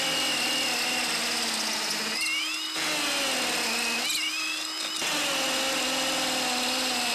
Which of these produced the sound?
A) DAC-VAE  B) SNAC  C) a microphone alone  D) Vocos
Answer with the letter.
C